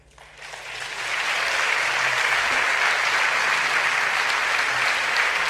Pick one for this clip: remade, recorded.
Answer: recorded